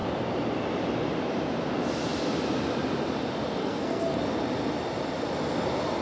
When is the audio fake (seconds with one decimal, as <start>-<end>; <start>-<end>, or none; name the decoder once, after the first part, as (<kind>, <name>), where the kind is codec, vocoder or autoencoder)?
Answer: 3.6-4.2 (codec, SNAC)